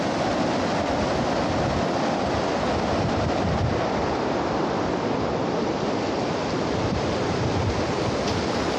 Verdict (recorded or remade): recorded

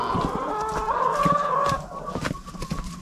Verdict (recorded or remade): recorded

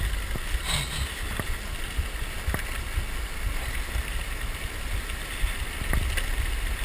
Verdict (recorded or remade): recorded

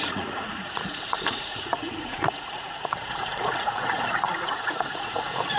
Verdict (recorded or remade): remade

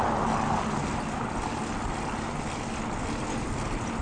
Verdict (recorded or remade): recorded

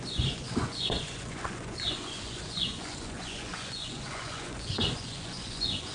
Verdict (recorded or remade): remade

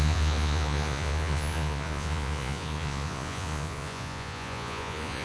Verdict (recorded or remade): remade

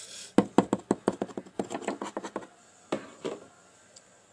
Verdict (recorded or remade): recorded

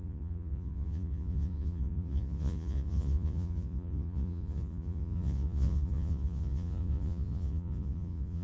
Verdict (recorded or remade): remade